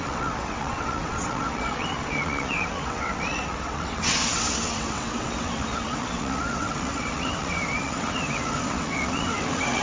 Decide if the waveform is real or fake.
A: fake